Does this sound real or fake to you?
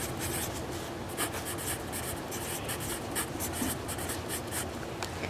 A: real